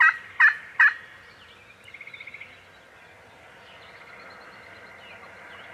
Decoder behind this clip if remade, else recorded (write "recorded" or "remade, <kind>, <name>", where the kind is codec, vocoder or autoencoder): recorded